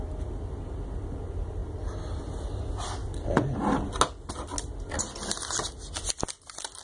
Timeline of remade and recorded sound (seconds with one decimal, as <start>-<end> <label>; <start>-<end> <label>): 0.0-6.8 recorded